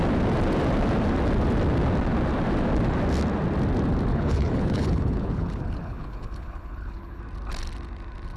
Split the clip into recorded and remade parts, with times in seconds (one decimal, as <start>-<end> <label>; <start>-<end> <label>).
0.0-4.1 recorded; 4.1-7.2 remade; 7.2-8.4 recorded